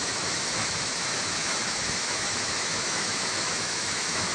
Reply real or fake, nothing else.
fake